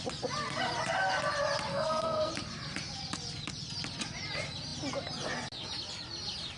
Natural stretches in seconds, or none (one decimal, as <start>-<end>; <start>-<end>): 0.0-1.7; 2.3-6.6